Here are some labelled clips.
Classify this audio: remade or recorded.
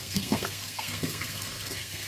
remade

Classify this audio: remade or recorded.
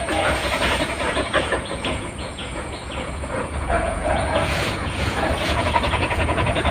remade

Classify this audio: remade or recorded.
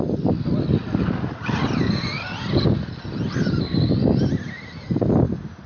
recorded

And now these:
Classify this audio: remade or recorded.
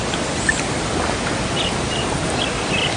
recorded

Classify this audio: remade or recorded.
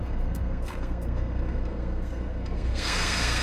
remade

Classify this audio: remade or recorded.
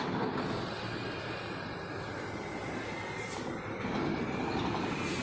recorded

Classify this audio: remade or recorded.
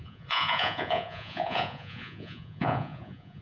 remade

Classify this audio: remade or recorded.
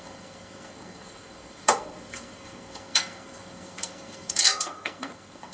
remade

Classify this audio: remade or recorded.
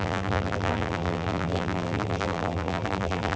remade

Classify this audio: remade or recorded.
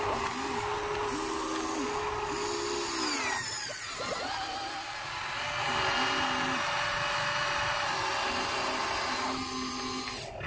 recorded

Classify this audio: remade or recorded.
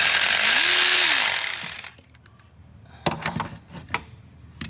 recorded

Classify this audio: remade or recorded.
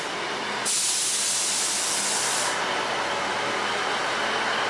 recorded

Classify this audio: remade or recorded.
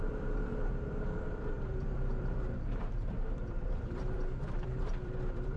remade